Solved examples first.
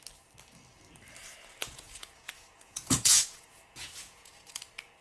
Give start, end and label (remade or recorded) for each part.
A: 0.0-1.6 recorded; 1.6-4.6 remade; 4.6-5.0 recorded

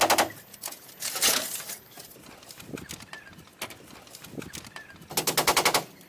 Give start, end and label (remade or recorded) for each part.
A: 0.0-0.5 recorded; 0.5-1.4 remade; 1.4-6.1 recorded

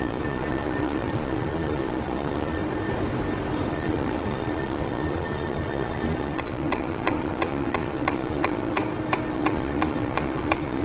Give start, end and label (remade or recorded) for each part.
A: 0.0-2.6 remade; 2.6-3.7 recorded; 3.7-8.8 remade; 8.8-9.3 recorded; 9.3-10.8 remade

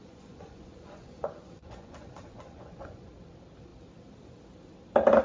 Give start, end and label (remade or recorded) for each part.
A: 0.0-3.1 remade; 3.1-5.2 recorded

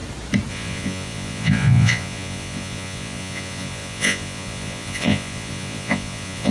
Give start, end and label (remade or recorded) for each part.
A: 0.0-0.5 recorded; 0.5-6.5 remade

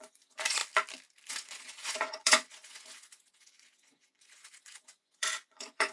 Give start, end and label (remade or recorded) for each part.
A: 0.0-0.6 remade; 0.6-1.3 recorded; 1.3-5.9 remade

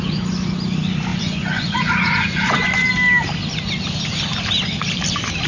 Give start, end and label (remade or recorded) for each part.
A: 0.0-1.1 recorded; 1.1-2.9 remade; 2.9-5.5 recorded